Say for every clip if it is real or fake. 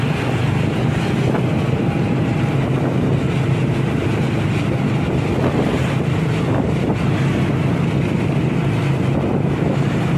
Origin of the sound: real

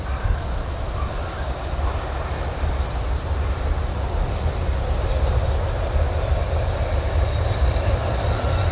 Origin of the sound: real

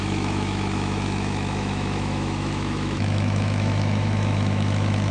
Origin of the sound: fake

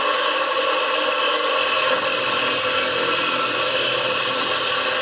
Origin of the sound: real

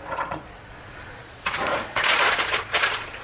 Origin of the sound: fake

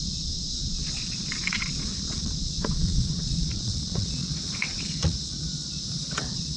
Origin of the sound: fake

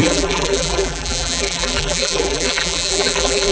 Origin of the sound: fake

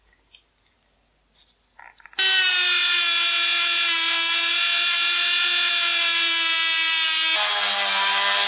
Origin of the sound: real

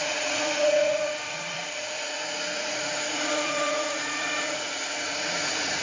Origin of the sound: fake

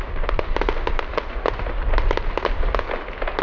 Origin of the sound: real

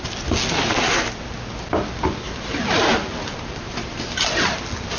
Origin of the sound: real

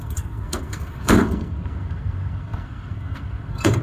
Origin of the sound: fake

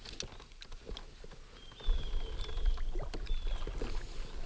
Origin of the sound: real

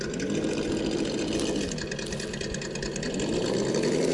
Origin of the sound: real